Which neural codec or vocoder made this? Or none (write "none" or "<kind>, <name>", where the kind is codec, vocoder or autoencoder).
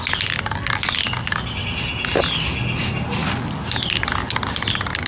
none